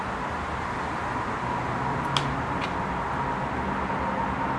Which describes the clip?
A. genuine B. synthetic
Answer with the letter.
A